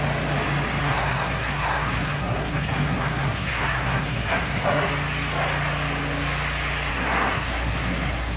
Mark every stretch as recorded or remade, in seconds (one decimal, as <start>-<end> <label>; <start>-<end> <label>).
0.0-0.8 recorded; 0.8-4.9 remade; 4.9-6.9 recorded; 6.9-8.4 remade